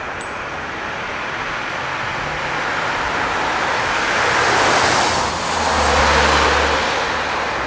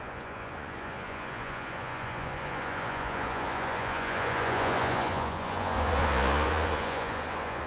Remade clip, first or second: second